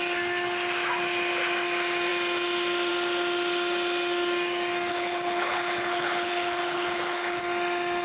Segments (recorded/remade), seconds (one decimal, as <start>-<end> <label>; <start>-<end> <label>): 0.0-4.9 recorded; 4.9-7.4 remade; 7.4-8.0 recorded